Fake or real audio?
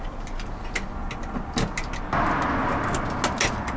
real